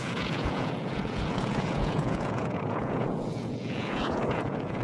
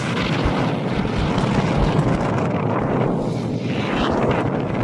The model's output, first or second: first